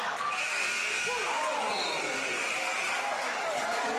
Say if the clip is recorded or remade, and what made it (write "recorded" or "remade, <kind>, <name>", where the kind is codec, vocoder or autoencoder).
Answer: remade, codec, DAC